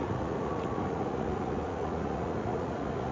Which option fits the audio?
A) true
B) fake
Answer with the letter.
B